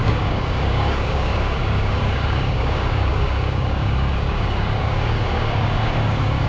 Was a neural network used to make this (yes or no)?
yes